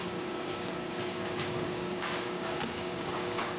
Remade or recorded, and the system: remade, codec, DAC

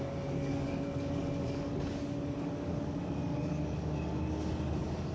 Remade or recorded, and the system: remade, codec, DAC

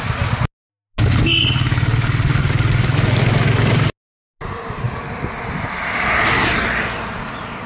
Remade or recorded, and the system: recorded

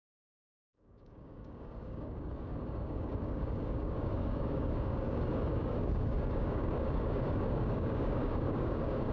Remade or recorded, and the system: remade, codec, DAC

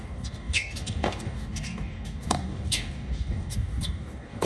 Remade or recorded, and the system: remade, codec, DAC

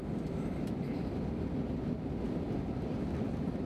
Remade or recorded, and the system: recorded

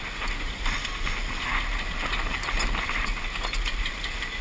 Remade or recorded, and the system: recorded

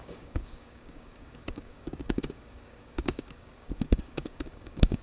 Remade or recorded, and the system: remade, codec, DAC